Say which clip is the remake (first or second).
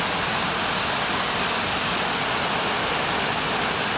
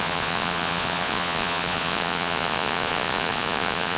second